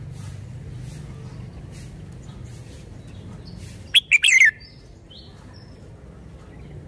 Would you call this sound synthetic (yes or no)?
no